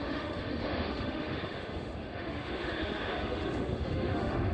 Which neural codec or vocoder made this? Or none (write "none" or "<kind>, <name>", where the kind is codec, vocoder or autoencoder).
autoencoder, DAC-VAE